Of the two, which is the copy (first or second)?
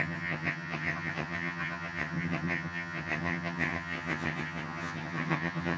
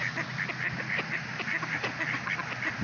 first